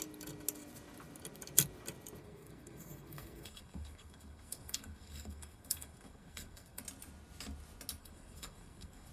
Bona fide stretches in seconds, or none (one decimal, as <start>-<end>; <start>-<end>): 0.0-2.2; 6.8-8.0